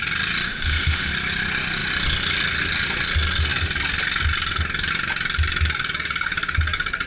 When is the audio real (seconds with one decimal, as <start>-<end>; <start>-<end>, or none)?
0.0-0.5; 1.1-7.1